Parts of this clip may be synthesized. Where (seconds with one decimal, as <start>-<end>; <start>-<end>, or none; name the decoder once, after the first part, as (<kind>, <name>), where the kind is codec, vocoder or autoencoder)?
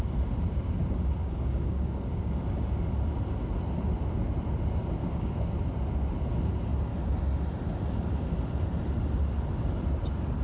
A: 1.2-2.3 (codec, DAC); 5.0-5.5